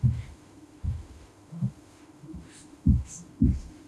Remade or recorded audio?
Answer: remade